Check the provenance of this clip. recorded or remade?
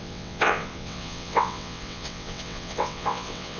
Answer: remade